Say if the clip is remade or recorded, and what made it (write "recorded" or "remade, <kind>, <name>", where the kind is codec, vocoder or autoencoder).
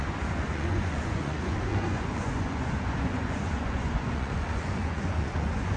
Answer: remade, vocoder, Vocos